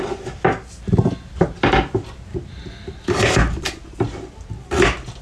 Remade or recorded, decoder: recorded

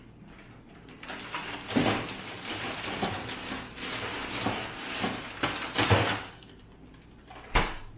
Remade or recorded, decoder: recorded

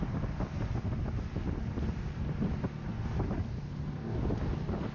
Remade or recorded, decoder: recorded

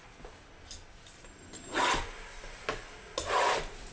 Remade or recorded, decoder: recorded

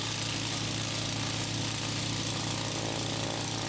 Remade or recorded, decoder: recorded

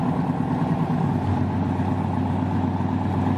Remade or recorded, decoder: recorded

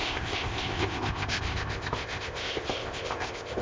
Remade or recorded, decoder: remade, codec, ZipCodec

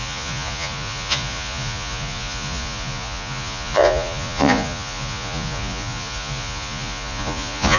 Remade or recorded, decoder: remade, vocoder, Vocos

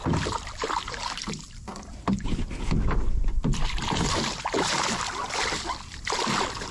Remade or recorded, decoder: recorded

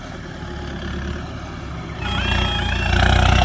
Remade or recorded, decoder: recorded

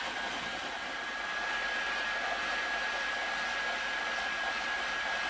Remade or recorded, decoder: recorded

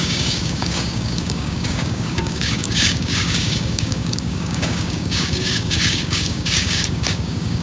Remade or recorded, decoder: remade, codec, DAC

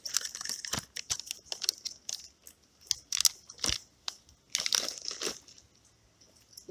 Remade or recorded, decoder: recorded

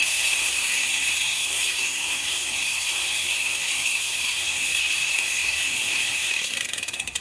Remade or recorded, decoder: remade, codec, SNAC